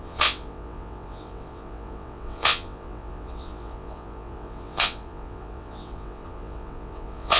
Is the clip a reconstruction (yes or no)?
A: yes